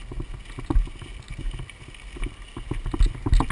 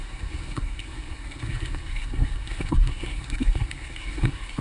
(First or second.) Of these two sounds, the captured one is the first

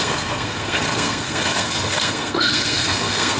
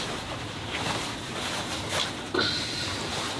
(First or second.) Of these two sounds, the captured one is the second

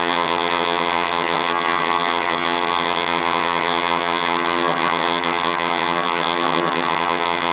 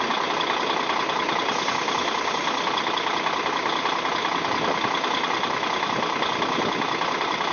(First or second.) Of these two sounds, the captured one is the second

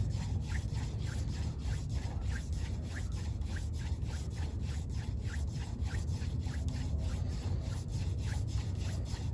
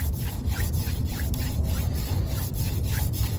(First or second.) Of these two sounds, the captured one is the first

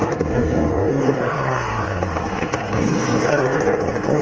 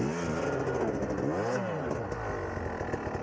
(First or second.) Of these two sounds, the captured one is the second